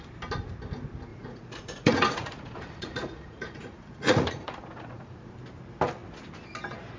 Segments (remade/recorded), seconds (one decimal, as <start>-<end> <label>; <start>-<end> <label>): 0.0-1.1 recorded; 1.1-5.3 remade; 5.3-7.0 recorded